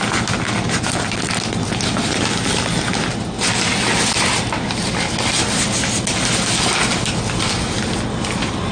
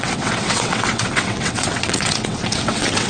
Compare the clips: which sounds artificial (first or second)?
second